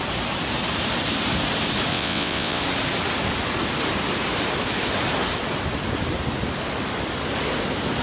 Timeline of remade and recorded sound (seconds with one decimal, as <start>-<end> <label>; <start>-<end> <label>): 0.0-1.9 recorded; 1.9-2.6 remade; 2.6-8.0 recorded